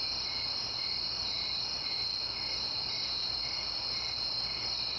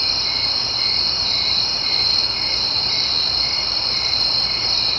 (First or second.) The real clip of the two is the first